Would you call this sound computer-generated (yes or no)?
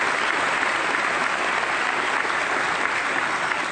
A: no